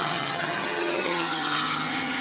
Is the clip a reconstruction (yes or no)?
yes